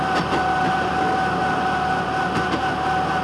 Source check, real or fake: real